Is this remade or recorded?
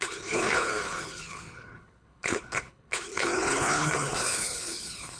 remade